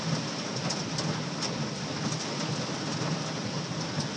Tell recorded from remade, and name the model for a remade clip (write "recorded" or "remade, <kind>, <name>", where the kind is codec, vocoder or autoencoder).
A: recorded